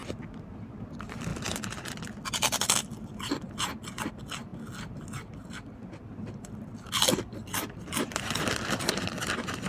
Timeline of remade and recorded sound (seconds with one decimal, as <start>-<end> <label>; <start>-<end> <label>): 0.0-0.6 recorded; 0.6-1.3 remade; 1.3-4.1 recorded; 4.1-4.5 remade; 4.5-5.4 recorded; 5.4-9.7 remade